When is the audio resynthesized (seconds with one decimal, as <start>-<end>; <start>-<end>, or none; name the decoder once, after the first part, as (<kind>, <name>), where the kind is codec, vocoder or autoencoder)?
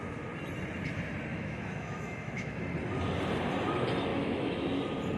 1.3-2.6 (autoencoder, DAC-VAE); 4.1-4.8